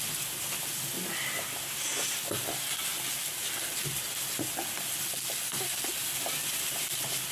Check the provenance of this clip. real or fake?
real